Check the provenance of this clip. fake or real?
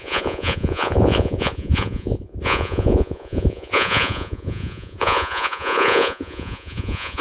fake